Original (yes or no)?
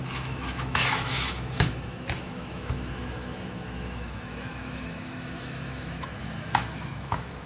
no